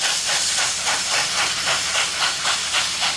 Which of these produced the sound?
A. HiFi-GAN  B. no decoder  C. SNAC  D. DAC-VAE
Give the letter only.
B